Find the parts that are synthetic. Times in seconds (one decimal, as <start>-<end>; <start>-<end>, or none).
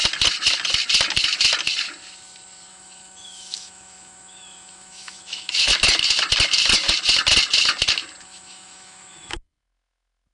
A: 2.7-5.7; 8.2-10.3